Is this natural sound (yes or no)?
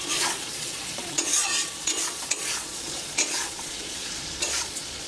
no